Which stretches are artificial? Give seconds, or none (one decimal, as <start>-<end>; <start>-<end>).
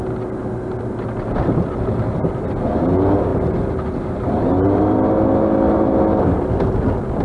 none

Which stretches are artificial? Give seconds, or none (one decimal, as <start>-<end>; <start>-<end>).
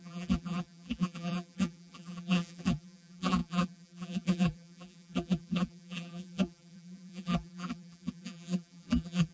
0.0-9.3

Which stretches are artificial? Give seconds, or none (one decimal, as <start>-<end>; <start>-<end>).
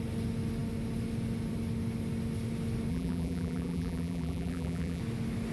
2.9-5.0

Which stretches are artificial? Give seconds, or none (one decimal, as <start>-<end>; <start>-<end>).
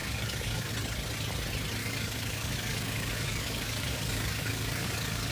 0.0-0.7; 1.8-5.3